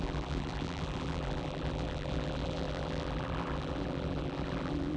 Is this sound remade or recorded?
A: remade